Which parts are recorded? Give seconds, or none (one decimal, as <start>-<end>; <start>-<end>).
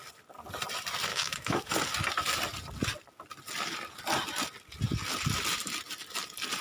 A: 0.0-1.1; 1.7-6.6